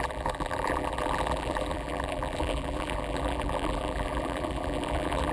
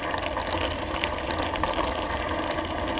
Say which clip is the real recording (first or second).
second